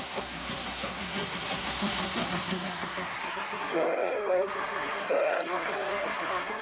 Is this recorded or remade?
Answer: remade